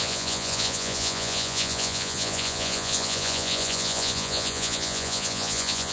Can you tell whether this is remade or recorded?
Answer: remade